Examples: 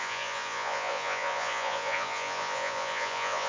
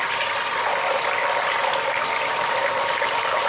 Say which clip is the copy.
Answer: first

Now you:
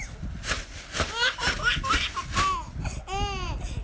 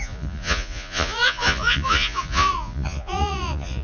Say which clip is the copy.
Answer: second